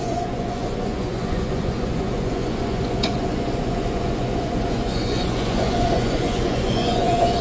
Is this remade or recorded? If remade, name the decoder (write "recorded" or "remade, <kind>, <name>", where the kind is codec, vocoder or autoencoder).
remade, vocoder, Vocos